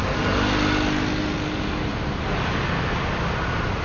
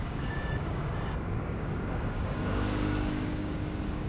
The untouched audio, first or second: first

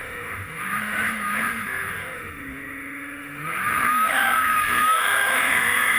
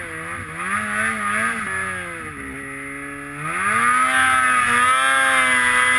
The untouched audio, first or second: second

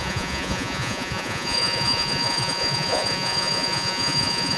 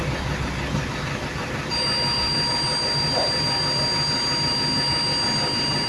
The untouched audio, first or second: second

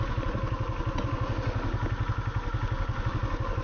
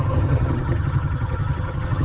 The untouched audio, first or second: first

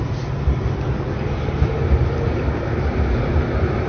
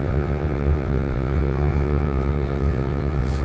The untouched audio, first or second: first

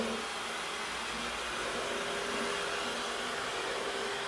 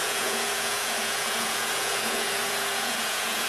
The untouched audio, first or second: first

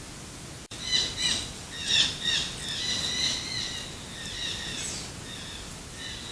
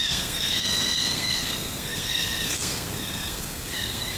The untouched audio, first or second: first